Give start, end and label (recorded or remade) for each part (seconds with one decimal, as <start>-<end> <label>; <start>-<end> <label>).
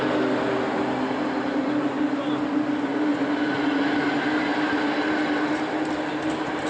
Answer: 0.0-6.7 recorded